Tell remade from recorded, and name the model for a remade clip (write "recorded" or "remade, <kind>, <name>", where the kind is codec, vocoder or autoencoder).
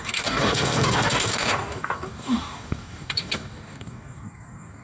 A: remade, codec, DAC